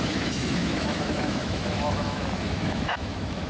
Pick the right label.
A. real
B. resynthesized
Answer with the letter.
B